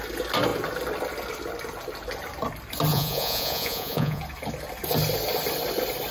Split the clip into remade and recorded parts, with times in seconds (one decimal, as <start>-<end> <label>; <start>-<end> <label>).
0.0-2.9 recorded; 2.9-4.2 remade; 4.2-6.1 recorded